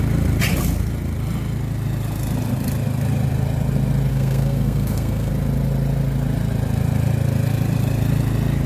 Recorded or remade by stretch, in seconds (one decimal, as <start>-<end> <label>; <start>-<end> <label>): 0.0-4.1 recorded; 4.1-5.3 remade; 5.3-8.7 recorded